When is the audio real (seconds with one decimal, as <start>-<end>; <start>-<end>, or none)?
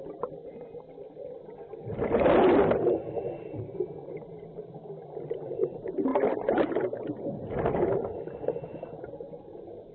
0.0-9.9